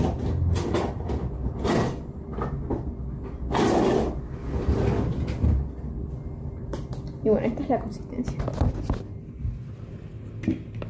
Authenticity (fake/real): real